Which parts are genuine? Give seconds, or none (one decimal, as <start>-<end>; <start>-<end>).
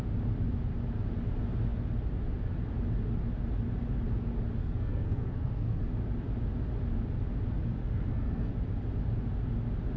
0.0-4.6; 5.8-7.8; 8.5-10.0